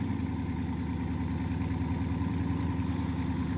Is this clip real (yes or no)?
yes